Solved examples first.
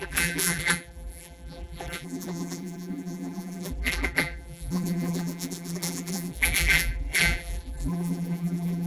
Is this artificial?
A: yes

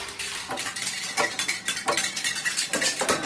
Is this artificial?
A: no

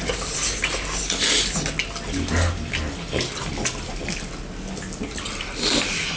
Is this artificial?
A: no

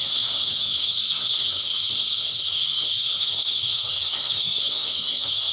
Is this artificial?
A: yes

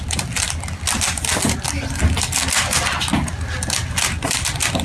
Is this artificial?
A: no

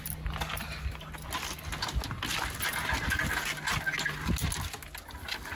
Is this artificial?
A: no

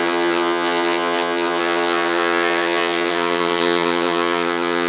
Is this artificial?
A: yes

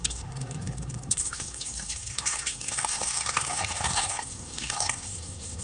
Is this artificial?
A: yes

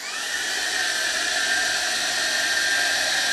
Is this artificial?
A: no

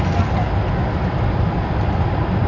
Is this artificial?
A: no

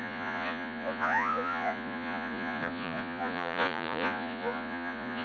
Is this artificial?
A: yes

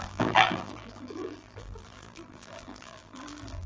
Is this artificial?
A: yes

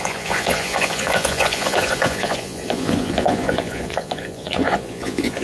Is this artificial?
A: yes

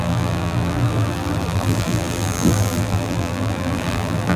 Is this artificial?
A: yes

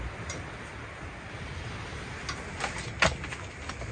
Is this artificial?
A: no